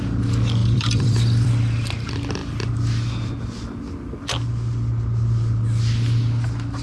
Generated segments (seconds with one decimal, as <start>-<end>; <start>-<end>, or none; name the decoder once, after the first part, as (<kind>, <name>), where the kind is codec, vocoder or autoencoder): 0.6-1.5 (vocoder, BigVGAN v2)